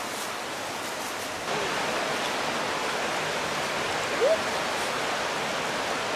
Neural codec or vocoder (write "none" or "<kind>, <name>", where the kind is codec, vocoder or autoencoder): none